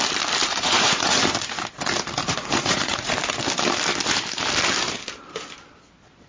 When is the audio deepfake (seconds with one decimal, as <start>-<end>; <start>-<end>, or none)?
0.4-1.2; 2.2-3.1

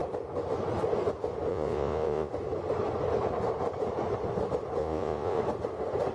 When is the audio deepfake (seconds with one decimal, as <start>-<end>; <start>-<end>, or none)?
1.5-2.3; 4.8-5.4

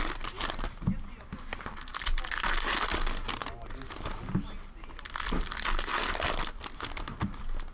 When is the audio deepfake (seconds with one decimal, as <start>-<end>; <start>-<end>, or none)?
none

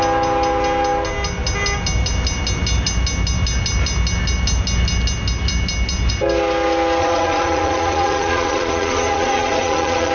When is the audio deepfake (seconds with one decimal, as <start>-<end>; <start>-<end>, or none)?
7.0-10.1

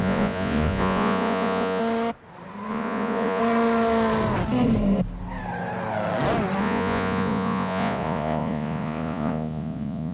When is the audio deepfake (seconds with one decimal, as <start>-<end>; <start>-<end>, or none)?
0.0-1.8; 2.7-3.4; 6.6-10.1

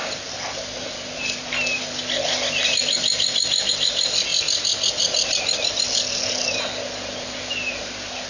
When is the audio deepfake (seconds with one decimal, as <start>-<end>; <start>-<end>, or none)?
none